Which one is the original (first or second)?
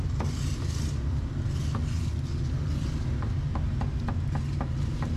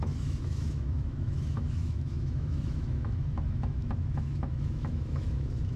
first